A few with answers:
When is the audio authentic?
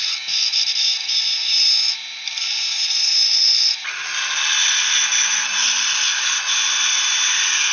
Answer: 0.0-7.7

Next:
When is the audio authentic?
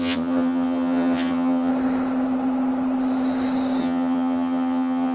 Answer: 1.7-3.8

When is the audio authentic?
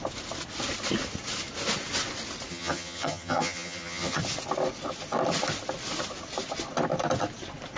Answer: 0.0-2.5; 4.2-7.8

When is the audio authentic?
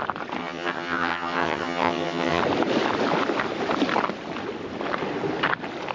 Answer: 0.0-0.4; 2.4-5.9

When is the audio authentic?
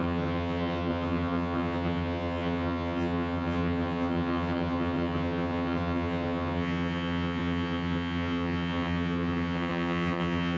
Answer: none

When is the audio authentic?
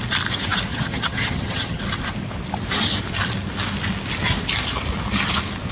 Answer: 0.0-0.7; 1.8-5.7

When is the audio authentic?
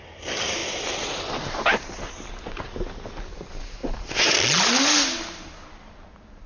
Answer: 0.0-6.5